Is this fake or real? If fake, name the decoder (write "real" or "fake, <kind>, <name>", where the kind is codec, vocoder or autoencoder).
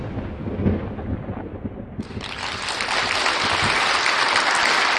real